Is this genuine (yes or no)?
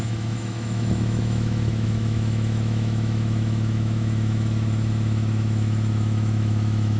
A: no